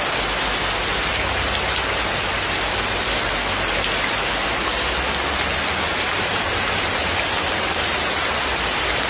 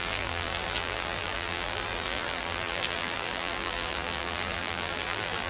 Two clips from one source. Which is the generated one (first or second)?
second